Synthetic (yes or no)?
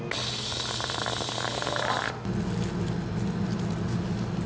no